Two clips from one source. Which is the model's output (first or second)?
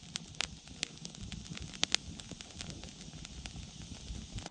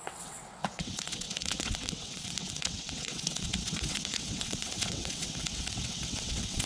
second